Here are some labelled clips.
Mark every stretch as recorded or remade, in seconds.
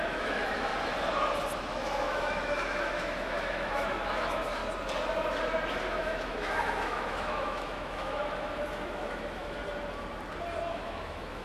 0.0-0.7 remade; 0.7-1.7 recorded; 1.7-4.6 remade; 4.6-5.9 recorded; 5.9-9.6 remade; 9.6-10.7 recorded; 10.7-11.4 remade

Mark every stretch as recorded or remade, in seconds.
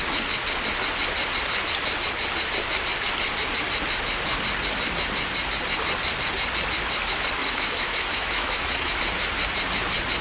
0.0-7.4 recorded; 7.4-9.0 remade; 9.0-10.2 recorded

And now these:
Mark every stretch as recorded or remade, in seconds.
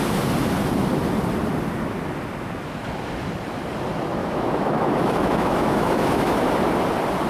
0.0-4.2 recorded; 4.2-6.5 remade; 6.5-7.3 recorded